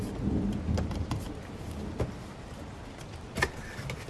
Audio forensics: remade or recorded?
recorded